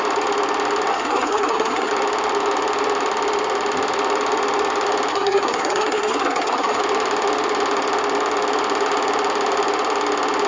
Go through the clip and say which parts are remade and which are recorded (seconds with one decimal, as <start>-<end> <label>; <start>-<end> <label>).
0.0-0.9 recorded; 0.9-1.9 remade; 1.9-5.1 recorded; 5.1-6.8 remade; 6.8-10.5 recorded